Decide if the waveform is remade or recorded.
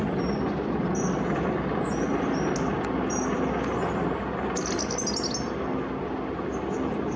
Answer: recorded